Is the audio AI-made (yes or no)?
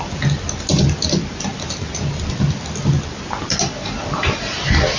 no